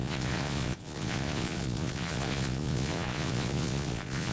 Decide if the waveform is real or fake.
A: fake